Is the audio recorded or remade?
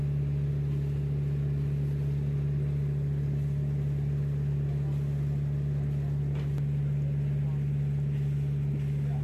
recorded